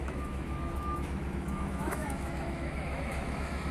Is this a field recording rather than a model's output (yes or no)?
no